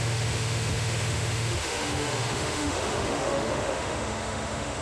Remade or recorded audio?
remade